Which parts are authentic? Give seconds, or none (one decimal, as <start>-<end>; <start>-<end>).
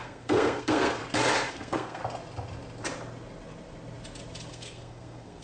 1.0-1.5; 2.0-4.5